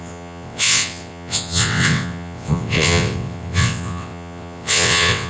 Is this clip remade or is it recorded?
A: remade